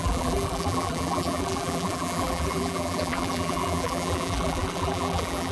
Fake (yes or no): yes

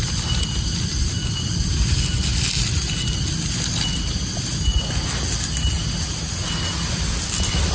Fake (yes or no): no